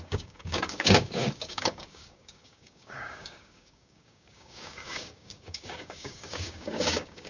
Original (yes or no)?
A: no